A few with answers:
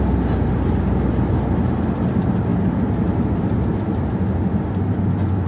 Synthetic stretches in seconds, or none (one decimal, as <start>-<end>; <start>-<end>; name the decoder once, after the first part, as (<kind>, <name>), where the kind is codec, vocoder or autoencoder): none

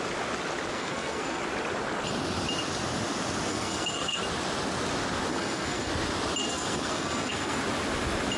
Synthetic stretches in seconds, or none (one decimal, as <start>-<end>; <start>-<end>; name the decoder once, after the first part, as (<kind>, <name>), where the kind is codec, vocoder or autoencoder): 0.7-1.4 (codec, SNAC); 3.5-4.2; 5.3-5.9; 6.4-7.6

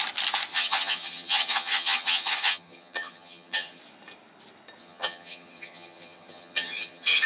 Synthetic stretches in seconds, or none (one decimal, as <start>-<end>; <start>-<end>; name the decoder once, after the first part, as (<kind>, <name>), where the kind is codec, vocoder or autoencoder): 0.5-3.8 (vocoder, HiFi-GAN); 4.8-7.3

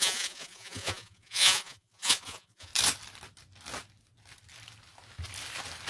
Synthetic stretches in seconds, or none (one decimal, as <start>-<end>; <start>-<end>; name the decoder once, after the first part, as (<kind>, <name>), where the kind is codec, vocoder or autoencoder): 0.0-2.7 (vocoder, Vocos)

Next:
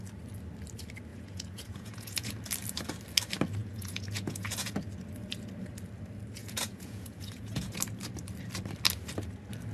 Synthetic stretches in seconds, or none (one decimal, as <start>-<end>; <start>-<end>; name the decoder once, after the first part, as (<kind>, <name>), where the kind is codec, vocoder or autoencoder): 1.1-2.3 (vocoder, Vocos); 3.6-4.8; 6.4-7.8